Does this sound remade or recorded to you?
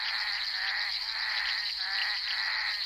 recorded